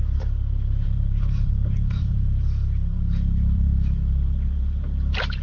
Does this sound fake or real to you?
fake